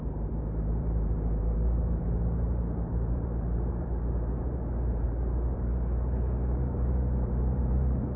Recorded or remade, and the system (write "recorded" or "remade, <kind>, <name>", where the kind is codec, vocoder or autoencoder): remade, vocoder, BigVGAN v2